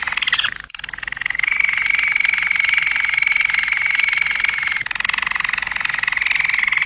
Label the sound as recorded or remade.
recorded